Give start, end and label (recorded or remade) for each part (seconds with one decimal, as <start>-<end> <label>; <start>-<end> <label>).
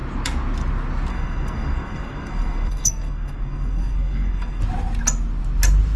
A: 0.0-1.1 recorded; 1.1-4.6 remade; 4.6-6.0 recorded